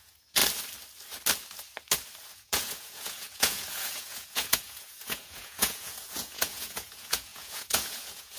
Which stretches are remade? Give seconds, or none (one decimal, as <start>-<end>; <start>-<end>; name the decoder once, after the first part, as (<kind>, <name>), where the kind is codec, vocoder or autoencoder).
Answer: 0.0-0.4 (vocoder, Vocos); 2.3-8.4